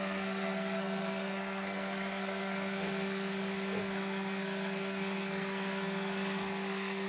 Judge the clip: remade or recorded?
remade